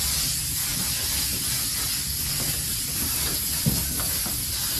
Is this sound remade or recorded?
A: recorded